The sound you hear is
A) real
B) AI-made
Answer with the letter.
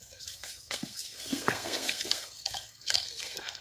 B